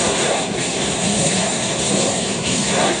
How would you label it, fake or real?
fake